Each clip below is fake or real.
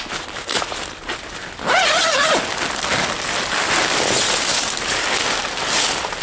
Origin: real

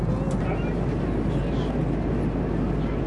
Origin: real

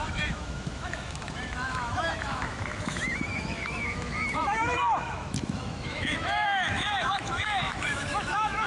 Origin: fake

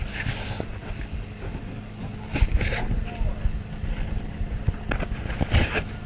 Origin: real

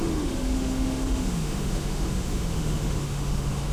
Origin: fake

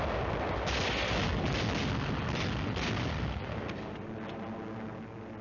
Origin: real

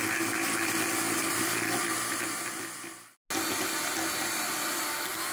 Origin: real